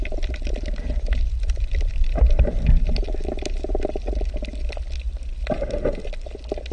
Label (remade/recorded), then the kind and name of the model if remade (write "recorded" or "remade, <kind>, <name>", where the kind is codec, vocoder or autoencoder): recorded